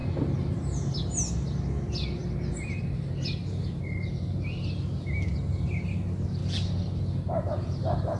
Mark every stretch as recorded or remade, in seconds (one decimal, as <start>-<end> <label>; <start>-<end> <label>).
0.0-8.2 recorded